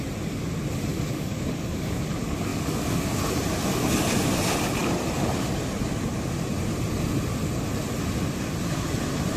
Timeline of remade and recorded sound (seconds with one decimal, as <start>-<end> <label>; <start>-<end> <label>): 0.0-0.9 recorded; 0.9-2.0 remade; 2.0-2.5 recorded; 2.5-3.2 remade; 3.2-9.4 recorded